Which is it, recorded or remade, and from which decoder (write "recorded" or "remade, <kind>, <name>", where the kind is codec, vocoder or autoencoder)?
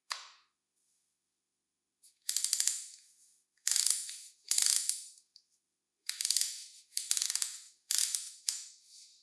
remade, autoencoder, DAC-VAE